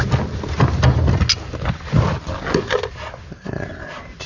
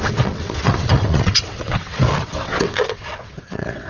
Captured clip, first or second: first